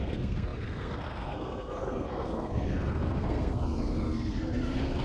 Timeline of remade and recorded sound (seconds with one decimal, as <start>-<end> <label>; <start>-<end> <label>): 0.0-5.0 remade